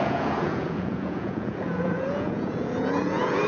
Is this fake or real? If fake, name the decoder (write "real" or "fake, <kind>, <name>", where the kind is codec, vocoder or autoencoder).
fake, vocoder, Vocos